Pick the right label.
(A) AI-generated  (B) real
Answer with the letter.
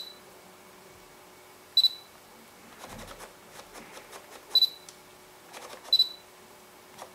B